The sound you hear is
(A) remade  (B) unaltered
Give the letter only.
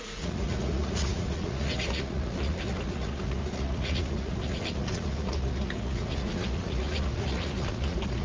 A